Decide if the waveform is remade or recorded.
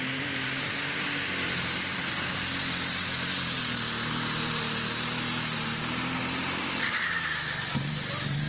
remade